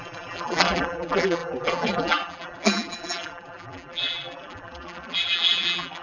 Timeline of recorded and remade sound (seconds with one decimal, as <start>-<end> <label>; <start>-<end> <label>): 0.0-6.0 remade